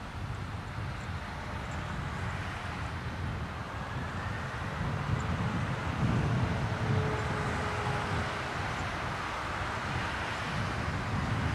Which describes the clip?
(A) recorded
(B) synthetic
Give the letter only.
A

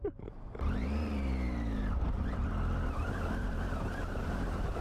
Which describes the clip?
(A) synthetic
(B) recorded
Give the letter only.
A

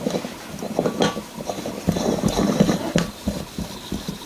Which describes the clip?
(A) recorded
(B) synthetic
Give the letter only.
A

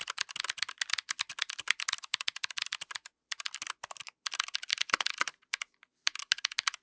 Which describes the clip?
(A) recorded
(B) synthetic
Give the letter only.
A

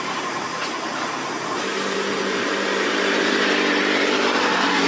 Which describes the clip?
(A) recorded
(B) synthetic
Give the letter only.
B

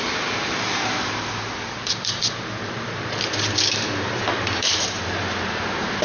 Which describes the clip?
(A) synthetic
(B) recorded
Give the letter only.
A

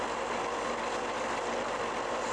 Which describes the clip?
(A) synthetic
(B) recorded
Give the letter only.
B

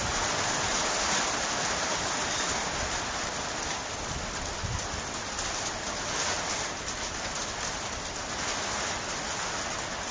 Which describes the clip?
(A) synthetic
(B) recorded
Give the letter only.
B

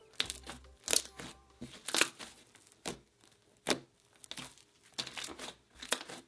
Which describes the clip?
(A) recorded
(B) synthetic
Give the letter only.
A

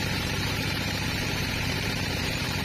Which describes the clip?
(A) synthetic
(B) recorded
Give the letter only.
A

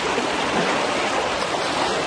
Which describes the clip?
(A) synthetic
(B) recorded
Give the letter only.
B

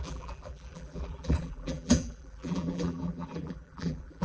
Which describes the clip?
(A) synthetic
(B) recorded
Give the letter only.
A